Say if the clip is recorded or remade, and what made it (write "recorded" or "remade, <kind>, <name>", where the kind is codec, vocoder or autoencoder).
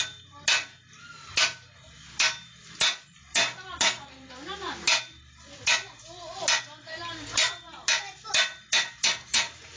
recorded